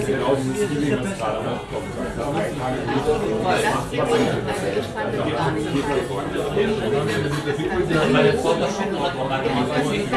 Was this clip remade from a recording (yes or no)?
no